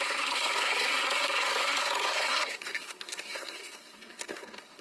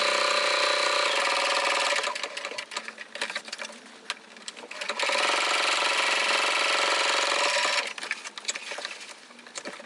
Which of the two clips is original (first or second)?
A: second